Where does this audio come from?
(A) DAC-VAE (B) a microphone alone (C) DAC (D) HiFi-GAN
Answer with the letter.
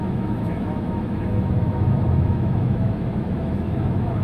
A